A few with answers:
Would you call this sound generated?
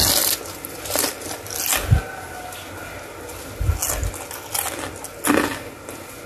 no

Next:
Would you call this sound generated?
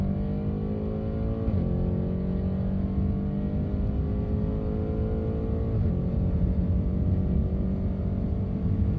no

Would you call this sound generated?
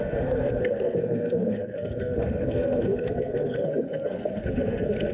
yes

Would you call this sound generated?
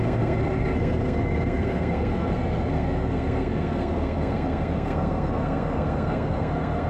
yes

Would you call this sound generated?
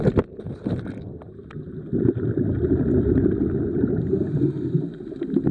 no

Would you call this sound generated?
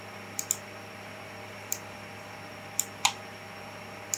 no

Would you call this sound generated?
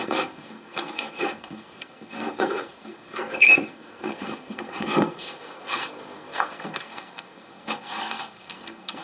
yes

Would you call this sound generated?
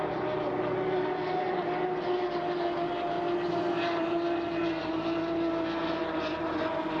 no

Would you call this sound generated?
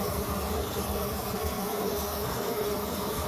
yes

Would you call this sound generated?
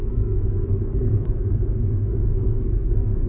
yes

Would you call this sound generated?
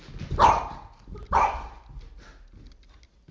no